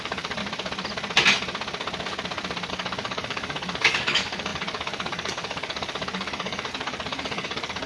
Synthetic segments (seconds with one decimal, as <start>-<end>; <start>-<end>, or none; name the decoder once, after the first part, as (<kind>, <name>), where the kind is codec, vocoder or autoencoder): 0.0-0.4 (codec, DAC); 2.7-7.9